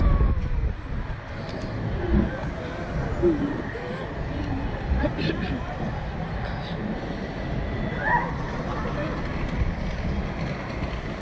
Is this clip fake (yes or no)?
no